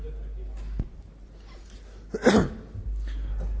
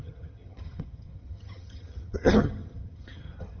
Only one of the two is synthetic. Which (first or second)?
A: second